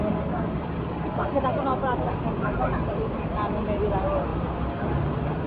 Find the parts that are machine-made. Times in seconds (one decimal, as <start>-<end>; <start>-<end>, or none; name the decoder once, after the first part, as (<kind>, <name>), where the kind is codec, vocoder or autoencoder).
none